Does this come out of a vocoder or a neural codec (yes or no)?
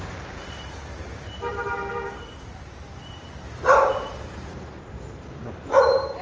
yes